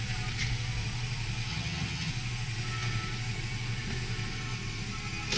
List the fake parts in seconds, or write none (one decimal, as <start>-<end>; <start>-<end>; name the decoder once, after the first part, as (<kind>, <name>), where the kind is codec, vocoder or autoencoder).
1.5-2.1 (vocoder, HiFi-GAN)

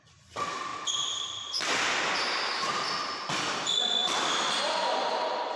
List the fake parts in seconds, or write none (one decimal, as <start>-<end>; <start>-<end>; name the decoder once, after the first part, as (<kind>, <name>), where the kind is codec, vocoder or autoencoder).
4.0-4.6 (vocoder, BigVGAN v2)

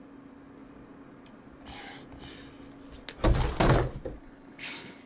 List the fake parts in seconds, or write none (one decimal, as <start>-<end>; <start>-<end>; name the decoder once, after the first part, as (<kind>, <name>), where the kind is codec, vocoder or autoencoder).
4.2-5.1 (codec, HILCodec)

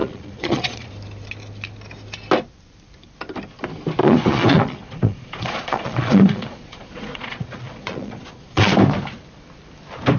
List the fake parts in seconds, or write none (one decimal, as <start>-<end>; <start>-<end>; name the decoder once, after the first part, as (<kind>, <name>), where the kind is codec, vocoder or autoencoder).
0.0-0.9 (vocoder, Vocos); 4.0-8.7

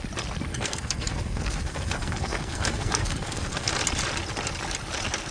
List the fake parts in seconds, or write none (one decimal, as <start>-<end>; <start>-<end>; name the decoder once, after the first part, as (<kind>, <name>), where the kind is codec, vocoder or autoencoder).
0.5-3.7 (codec, SNAC)

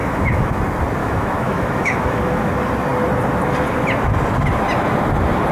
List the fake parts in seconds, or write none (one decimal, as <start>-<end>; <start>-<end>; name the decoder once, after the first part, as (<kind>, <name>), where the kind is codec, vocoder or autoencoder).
0.0-0.6 (autoencoder, DAC-VAE); 1.0-2.5